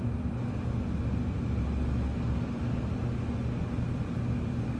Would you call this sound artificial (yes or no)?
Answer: no